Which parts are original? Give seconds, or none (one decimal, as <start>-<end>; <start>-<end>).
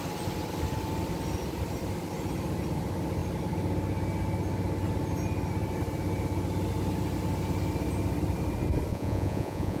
0.0-8.9